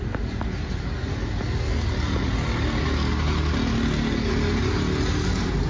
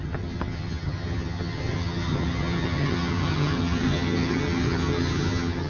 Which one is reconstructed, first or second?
second